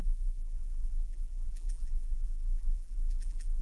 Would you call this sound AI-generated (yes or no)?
yes